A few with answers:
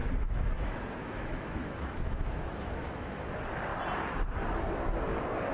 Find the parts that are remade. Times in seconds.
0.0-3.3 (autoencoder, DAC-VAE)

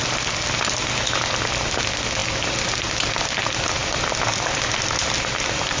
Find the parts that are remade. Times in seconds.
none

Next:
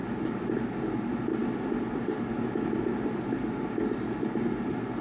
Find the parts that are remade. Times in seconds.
none